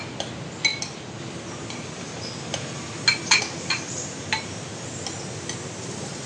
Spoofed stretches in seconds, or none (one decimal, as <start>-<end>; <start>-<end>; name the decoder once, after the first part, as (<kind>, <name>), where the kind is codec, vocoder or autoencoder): none